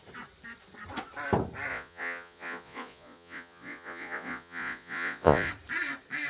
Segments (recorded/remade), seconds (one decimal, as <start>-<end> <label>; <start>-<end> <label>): 0.0-1.7 recorded; 1.7-5.5 remade; 5.5-6.3 recorded